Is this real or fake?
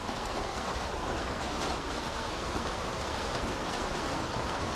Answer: fake